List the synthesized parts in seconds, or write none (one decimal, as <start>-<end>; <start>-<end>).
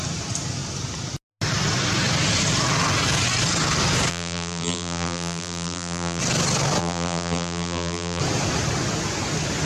4.1-6.2; 6.8-8.2